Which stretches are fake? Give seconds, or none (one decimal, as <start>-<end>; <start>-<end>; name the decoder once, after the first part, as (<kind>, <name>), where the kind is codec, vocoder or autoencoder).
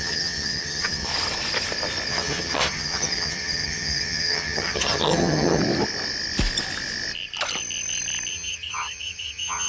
0.0-1.1 (vocoder, HiFi-GAN); 2.1-5.6; 8.3-9.7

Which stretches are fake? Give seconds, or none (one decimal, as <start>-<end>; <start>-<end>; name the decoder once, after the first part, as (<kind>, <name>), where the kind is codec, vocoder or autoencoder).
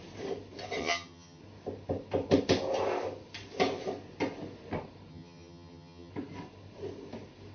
0.8-1.4 (vocoder, HiFi-GAN); 5.1-6.1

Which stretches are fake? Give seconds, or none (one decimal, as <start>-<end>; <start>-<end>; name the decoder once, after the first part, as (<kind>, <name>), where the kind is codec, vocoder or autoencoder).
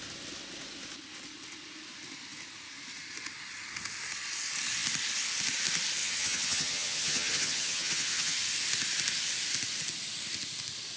6.0-8.4 (vocoder, HiFi-GAN)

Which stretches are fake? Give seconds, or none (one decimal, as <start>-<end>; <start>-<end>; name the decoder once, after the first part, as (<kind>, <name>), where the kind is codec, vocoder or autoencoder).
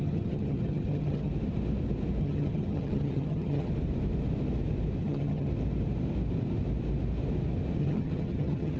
0.0-1.3 (vocoder, HiFi-GAN); 2.2-3.7; 5.0-5.5; 7.8-8.8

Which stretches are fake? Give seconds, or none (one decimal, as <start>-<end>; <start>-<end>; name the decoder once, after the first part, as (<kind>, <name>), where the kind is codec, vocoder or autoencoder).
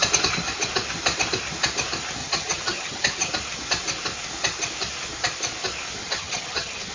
2.2-3.3 (vocoder, HiFi-GAN); 6.0-6.9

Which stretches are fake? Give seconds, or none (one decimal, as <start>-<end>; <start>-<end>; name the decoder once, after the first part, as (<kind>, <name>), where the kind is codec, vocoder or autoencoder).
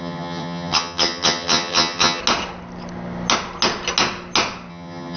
0.0-2.2 (vocoder, HiFi-GAN); 4.7-5.2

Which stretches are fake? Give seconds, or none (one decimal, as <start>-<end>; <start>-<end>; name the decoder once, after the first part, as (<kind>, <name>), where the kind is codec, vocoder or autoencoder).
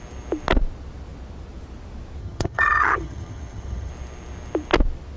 2.2-3.9 (vocoder, HiFi-GAN)